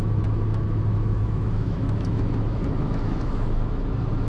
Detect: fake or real fake